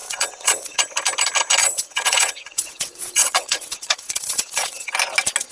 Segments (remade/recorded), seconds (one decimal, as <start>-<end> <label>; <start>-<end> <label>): 0.0-0.8 remade; 0.8-1.6 recorded; 1.6-4.9 remade; 4.9-5.5 recorded